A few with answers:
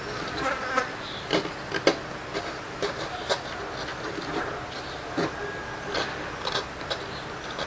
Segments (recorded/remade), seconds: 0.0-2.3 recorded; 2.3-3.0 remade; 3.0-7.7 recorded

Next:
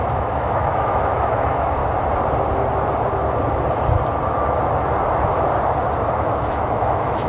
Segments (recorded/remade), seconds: 0.0-1.8 remade; 1.8-6.2 recorded; 6.2-7.3 remade

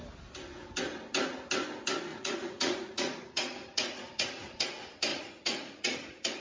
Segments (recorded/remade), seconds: 0.0-2.1 recorded; 2.1-4.6 remade; 4.6-5.1 recorded; 5.1-6.4 remade